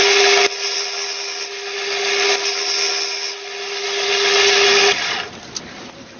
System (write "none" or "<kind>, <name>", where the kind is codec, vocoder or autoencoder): none